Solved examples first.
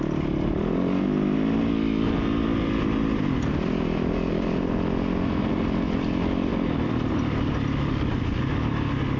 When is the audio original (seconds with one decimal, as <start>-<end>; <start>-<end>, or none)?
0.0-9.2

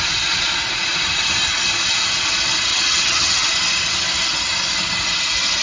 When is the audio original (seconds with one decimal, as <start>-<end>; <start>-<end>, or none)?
0.0-2.7; 3.5-5.6

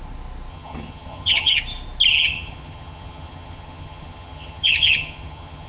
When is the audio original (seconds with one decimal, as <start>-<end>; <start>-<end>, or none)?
0.0-0.5; 1.6-2.1

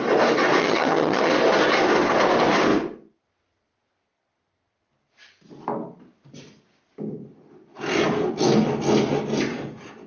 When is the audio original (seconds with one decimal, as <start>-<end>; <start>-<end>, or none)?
0.0-0.6; 1.3-10.1

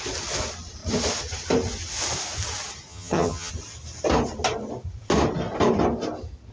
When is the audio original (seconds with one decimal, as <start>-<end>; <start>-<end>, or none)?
0.0-2.9; 3.5-6.5

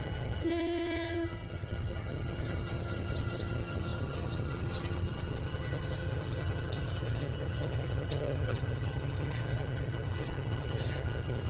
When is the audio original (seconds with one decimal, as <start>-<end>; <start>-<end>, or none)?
none